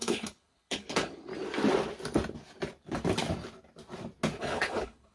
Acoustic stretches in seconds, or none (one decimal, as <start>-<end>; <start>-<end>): 1.3-4.4